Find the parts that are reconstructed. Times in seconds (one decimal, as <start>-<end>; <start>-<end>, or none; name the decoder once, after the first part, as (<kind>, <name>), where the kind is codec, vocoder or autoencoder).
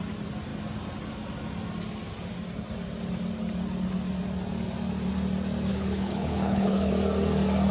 5.7-6.9 (codec, HILCodec)